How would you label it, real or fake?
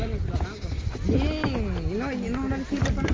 real